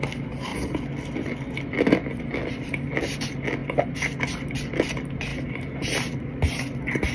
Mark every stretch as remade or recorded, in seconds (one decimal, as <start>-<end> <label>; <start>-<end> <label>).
0.0-7.1 recorded

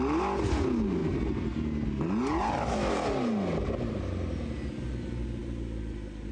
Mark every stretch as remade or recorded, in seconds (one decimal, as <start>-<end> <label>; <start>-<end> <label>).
0.0-6.3 recorded

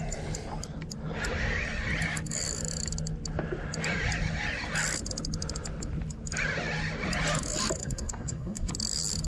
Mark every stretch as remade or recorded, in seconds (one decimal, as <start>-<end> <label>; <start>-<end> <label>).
0.0-7.8 recorded; 7.8-8.7 remade; 8.7-9.3 recorded